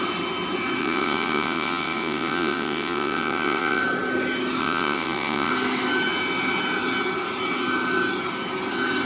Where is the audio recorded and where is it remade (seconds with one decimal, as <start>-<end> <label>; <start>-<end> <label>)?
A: 0.0-0.8 recorded; 0.8-3.8 remade; 3.8-4.6 recorded; 4.6-5.5 remade; 5.5-9.1 recorded